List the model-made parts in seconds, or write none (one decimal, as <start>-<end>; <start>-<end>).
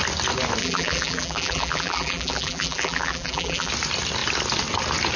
0.6-3.7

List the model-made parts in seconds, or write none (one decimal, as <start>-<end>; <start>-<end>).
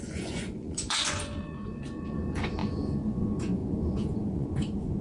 0.0-5.0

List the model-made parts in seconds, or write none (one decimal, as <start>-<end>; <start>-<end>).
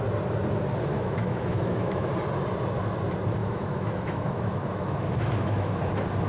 0.9-2.1; 3.4-5.8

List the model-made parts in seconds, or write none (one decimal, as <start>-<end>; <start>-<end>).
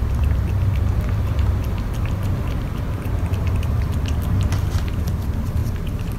none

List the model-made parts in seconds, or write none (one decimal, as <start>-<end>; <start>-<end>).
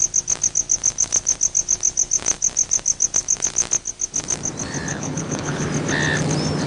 4.9-5.7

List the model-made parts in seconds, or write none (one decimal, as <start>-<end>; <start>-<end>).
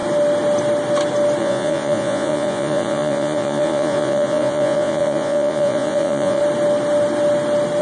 1.4-6.4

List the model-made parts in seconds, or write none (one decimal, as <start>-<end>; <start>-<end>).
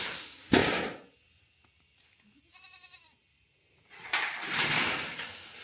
0.0-0.6; 3.7-5.6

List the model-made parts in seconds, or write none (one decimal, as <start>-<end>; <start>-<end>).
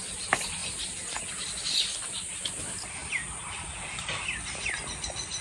none